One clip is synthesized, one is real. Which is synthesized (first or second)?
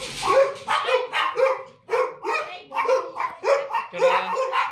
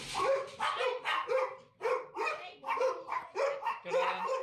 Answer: second